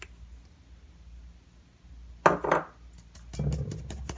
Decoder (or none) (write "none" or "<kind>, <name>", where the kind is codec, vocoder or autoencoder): none